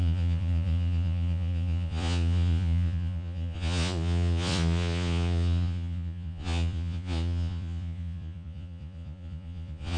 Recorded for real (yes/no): no